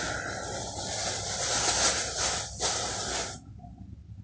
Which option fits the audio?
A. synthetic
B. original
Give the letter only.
B